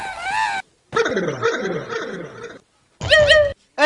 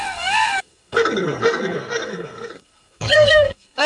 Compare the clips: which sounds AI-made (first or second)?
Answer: second